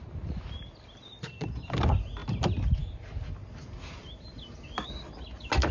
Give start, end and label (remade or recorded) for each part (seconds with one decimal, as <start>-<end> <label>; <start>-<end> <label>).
0.0-5.7 recorded